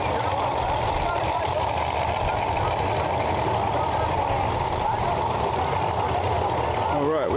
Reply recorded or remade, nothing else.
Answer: recorded